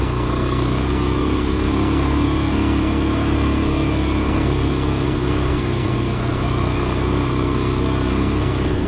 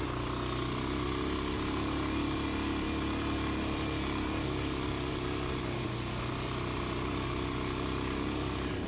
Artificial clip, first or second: first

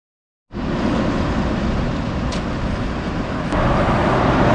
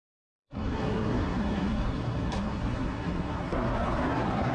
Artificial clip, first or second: second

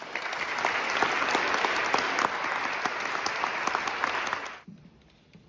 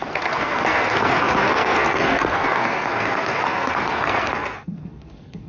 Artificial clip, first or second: second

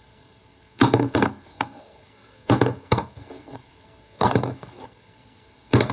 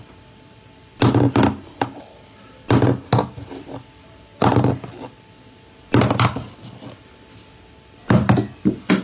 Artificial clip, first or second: first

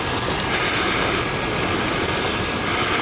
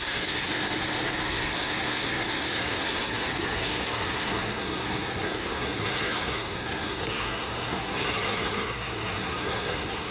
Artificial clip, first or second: second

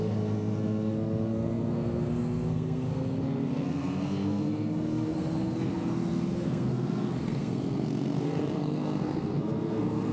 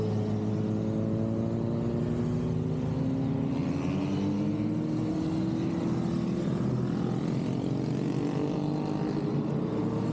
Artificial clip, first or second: first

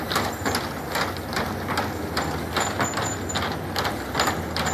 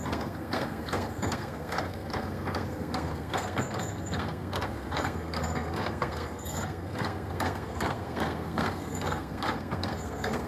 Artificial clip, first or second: second